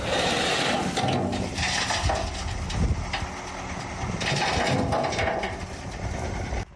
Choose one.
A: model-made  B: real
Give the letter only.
B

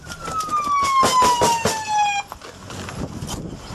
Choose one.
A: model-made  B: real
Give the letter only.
B